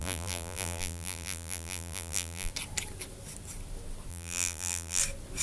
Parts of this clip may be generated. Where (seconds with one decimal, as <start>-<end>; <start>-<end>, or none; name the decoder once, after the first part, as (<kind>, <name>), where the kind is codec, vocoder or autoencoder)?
0.0-2.5 (vocoder, BigVGAN v2); 4.1-5.0